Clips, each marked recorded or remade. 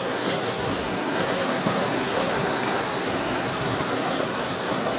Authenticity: remade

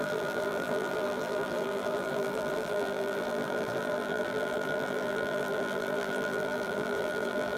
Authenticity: remade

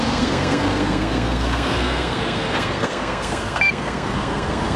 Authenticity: remade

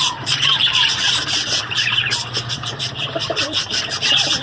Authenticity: remade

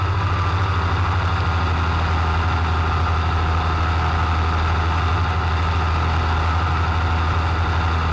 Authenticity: recorded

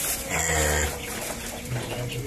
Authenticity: recorded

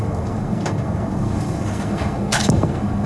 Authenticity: remade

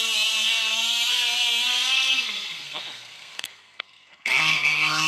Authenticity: remade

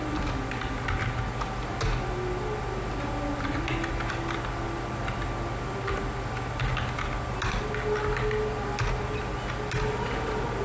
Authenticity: recorded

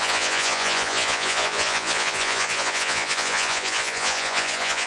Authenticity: remade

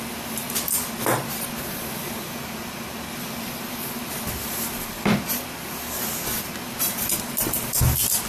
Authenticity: recorded